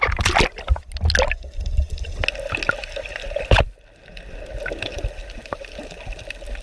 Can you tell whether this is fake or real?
real